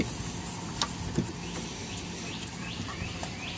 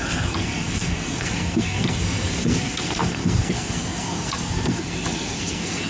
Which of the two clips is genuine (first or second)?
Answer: first